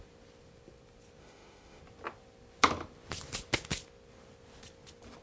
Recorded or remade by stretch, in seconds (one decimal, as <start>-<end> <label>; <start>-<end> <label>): 0.0-1.2 recorded; 1.2-1.8 remade; 1.8-5.2 recorded

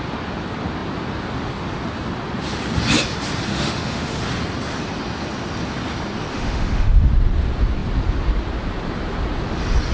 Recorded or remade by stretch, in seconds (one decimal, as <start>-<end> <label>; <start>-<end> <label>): 0.0-3.5 recorded; 3.5-4.2 remade; 4.2-6.3 recorded; 6.3-7.1 remade; 7.1-9.9 recorded